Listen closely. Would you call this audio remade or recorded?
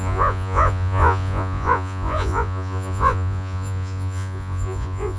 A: remade